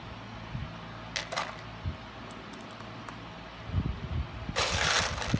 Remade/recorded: recorded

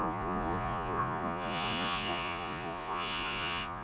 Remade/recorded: remade